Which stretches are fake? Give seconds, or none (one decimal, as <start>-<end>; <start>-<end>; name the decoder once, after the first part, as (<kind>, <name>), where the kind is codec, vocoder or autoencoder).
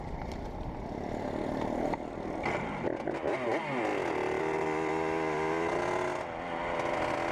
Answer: none